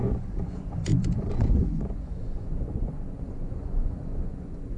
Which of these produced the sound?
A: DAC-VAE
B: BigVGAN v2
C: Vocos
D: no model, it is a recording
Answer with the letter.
C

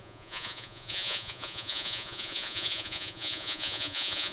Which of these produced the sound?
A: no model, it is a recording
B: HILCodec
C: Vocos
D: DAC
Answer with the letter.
C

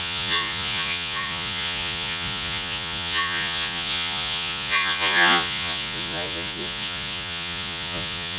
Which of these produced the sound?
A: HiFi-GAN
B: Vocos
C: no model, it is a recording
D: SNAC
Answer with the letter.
B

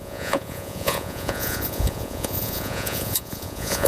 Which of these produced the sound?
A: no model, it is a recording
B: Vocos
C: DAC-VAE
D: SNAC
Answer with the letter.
B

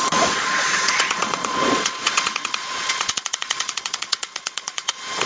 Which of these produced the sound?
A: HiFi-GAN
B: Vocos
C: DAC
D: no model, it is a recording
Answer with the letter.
B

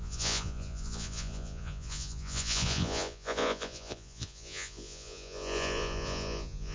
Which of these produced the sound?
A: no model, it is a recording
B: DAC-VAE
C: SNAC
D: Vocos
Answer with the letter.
D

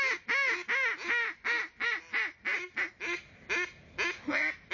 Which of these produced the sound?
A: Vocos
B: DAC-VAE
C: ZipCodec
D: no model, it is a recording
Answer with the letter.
D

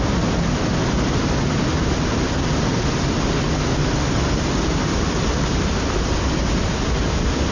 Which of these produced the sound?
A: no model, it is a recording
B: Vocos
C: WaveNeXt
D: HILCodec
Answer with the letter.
A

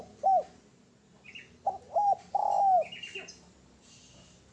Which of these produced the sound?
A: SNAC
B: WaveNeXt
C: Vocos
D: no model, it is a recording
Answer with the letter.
D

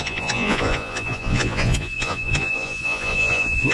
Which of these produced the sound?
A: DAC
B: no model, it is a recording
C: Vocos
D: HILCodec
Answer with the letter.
C